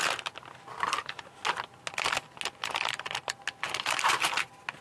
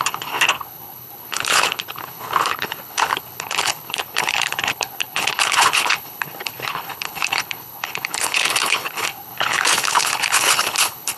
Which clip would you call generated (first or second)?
second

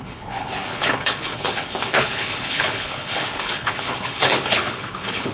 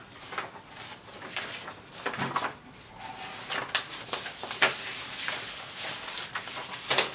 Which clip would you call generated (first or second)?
first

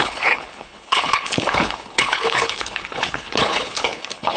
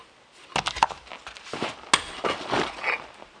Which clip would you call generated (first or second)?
first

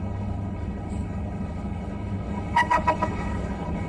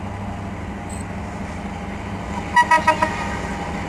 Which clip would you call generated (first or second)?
first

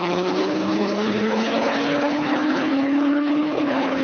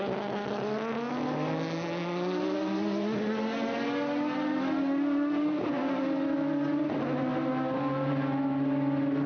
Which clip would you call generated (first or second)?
first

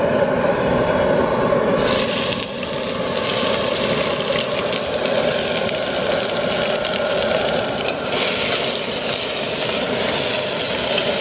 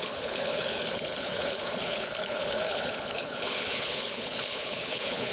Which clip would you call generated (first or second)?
second